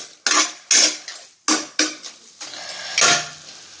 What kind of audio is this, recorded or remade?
recorded